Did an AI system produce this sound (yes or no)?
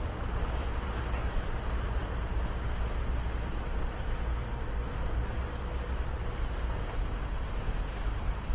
no